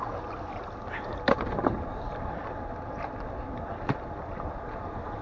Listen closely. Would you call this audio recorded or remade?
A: recorded